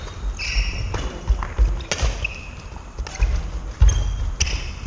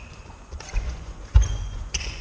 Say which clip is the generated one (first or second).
second